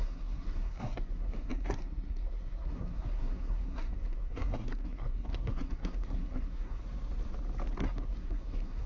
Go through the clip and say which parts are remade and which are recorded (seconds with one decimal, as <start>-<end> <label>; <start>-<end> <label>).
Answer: 0.0-6.8 remade; 6.8-7.8 recorded; 7.8-8.9 remade